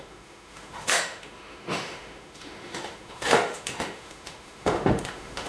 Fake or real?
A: fake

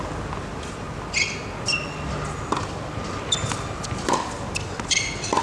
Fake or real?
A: real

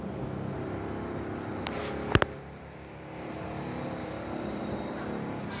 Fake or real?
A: real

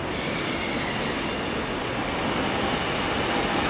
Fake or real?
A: real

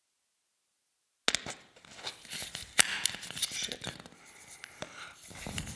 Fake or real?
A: real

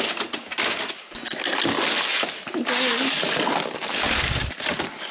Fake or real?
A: real